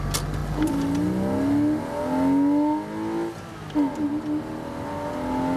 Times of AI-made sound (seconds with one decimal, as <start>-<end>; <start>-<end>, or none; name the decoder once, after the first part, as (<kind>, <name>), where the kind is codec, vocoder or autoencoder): none